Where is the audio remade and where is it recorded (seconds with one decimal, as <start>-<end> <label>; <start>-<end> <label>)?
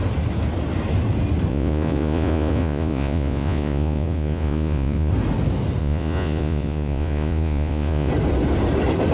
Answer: 0.0-1.5 recorded; 1.5-5.1 remade; 5.1-5.8 recorded; 5.8-8.1 remade; 8.1-9.1 recorded